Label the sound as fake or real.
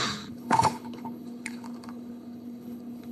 fake